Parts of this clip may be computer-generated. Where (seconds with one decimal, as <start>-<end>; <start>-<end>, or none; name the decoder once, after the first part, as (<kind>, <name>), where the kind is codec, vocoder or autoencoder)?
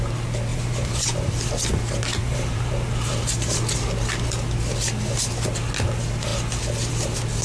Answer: 0.5-1.3 (vocoder, BigVGAN v2); 2.2-3.1